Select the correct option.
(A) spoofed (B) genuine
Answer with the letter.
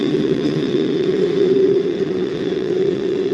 A